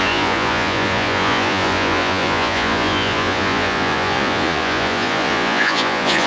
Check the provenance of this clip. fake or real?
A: fake